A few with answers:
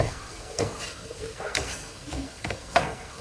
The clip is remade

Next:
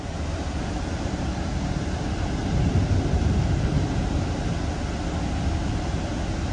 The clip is recorded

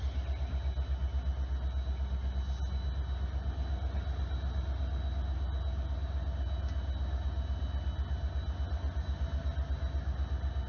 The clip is recorded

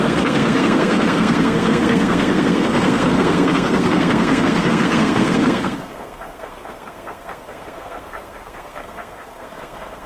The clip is remade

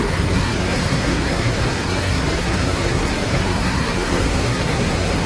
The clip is remade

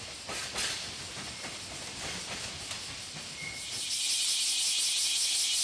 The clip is recorded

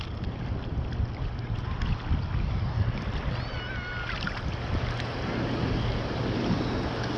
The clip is recorded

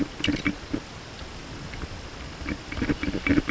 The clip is recorded